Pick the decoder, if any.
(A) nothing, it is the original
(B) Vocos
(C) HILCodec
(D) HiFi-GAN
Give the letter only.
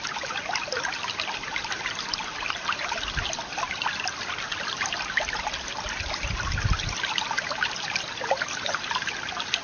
A